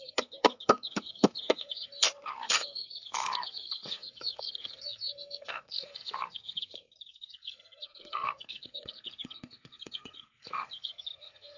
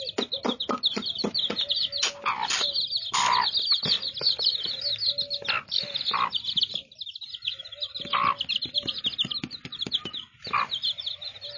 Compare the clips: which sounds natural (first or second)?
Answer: second